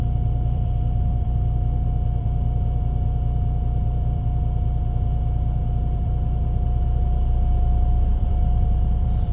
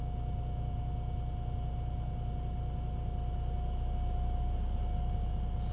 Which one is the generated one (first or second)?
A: first